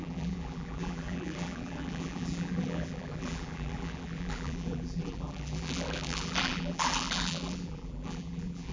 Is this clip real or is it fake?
fake